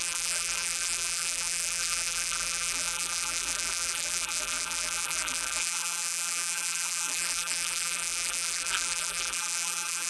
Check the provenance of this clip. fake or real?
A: fake